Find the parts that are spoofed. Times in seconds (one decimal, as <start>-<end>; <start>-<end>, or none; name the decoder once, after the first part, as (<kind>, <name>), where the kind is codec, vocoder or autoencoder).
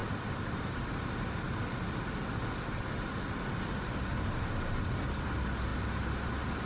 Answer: none